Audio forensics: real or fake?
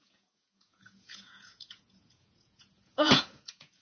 fake